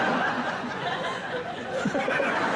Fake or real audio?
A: fake